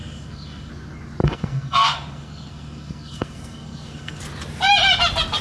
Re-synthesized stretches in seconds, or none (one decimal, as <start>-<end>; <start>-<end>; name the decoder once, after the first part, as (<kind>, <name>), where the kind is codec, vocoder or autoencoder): 0.0-0.7 (codec, SNAC); 1.2-4.2